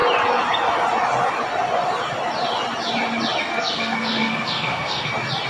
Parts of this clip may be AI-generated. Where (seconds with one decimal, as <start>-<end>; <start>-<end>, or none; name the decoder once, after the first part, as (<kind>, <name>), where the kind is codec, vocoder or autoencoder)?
3.4-5.1 (codec, SNAC)